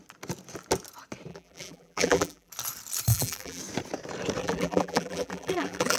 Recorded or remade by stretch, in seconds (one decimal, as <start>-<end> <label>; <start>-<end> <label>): 0.0-1.3 recorded; 1.3-2.5 remade; 2.5-3.1 recorded; 3.1-3.6 remade; 3.6-4.4 recorded; 4.4-6.0 remade